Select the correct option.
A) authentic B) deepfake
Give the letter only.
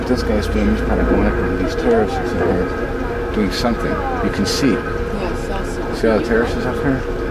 A